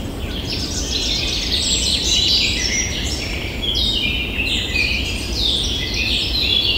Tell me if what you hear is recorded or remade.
recorded